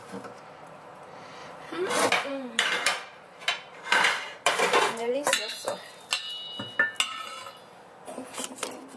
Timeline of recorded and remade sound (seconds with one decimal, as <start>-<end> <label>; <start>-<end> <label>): 0.0-1.4 recorded; 1.4-1.9 remade; 1.9-2.3 recorded; 2.3-5.1 remade; 5.1-9.0 recorded